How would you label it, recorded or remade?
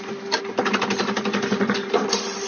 recorded